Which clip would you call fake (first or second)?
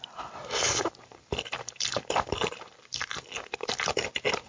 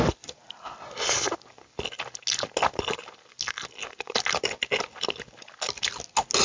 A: first